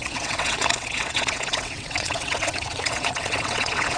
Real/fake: fake